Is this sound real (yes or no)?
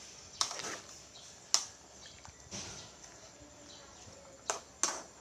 yes